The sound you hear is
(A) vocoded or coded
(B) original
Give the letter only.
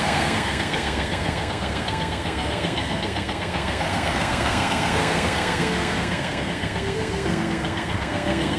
A